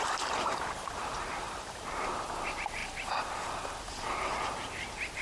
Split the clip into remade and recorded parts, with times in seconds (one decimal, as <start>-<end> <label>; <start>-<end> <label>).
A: 0.0-5.2 remade